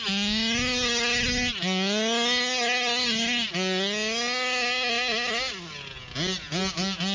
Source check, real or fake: real